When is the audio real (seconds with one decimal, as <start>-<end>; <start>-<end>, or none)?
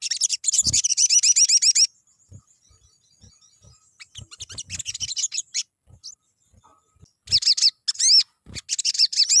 0.0-9.4